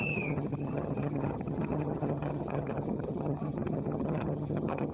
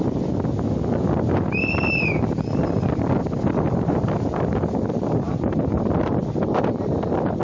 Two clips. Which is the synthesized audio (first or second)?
first